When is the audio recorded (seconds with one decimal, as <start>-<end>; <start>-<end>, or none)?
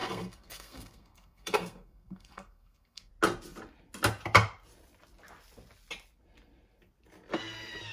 3.1-7.9